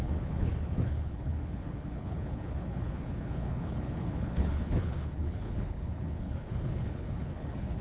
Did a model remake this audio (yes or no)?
yes